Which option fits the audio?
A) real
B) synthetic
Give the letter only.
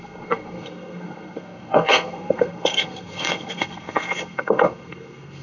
B